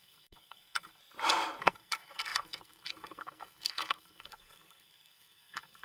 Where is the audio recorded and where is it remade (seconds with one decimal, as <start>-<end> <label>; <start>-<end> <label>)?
0.0-1.0 remade; 1.0-1.6 recorded; 1.6-5.8 remade